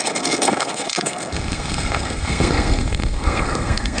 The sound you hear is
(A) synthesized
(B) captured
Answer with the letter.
A